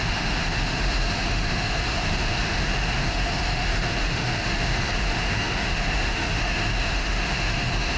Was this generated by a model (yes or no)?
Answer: yes